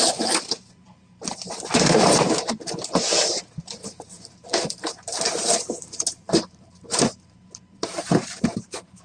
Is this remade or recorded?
remade